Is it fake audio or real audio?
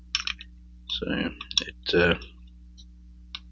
real